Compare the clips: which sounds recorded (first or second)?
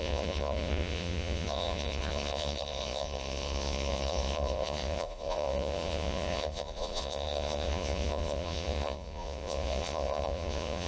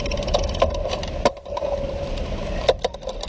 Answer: second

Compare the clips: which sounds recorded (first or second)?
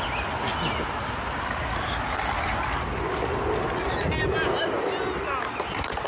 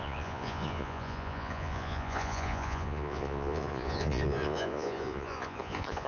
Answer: first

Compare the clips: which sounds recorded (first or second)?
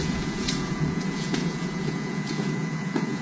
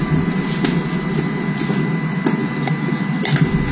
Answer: second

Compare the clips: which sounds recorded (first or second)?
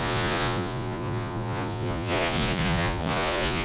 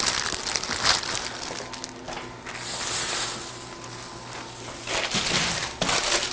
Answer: second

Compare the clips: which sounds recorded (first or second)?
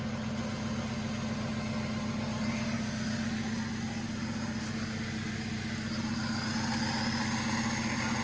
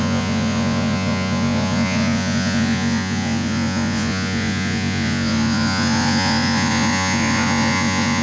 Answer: first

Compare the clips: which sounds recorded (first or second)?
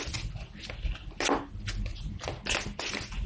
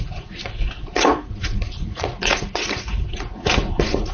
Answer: first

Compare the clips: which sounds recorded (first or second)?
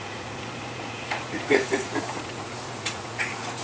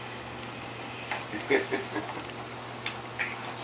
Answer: second